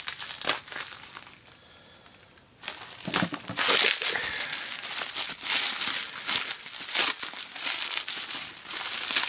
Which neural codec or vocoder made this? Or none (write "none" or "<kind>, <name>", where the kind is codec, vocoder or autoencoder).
none